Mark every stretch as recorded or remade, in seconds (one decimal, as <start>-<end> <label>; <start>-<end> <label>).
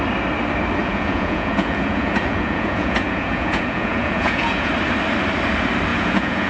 0.0-0.8 recorded; 0.8-4.7 remade; 4.7-5.9 recorded; 5.9-6.5 remade